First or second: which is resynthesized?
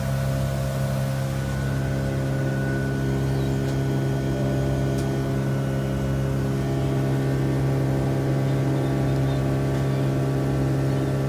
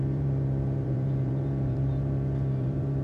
second